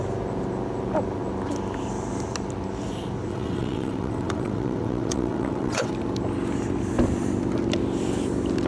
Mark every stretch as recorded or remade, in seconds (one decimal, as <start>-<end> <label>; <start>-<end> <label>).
0.0-3.3 recorded; 3.3-5.9 remade; 5.9-8.7 recorded